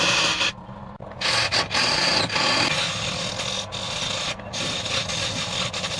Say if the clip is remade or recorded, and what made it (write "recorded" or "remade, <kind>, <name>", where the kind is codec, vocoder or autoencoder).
recorded